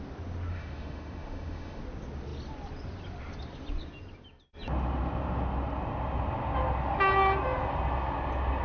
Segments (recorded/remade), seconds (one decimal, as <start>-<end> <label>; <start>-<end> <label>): 0.0-0.5 recorded; 0.5-1.8 remade; 1.8-8.6 recorded